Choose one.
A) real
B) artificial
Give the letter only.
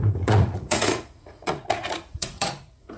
B